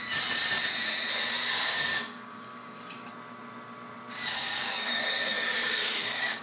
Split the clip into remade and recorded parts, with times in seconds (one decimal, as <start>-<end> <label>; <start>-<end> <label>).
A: 0.0-1.4 recorded; 1.4-3.1 remade; 3.1-4.4 recorded; 4.4-6.4 remade